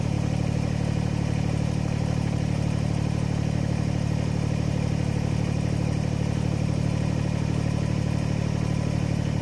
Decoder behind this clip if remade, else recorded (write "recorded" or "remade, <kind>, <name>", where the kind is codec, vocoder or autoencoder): remade, vocoder, BigVGAN v2